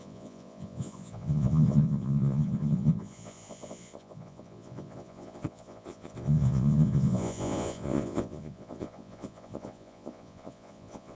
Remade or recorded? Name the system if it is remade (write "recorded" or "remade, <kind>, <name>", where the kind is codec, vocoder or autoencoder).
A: remade, vocoder, Vocos